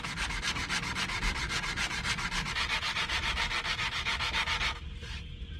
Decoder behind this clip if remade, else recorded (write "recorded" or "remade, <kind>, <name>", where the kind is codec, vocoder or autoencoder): remade, vocoder, BigVGAN v2